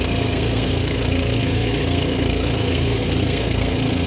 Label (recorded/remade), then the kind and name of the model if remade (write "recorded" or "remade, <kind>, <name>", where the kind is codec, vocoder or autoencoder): remade, codec, SNAC